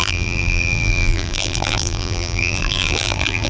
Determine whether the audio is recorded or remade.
remade